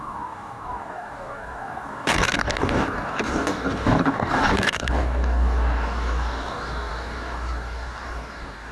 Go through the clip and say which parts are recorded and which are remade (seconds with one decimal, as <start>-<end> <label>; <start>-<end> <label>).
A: 0.0-8.7 remade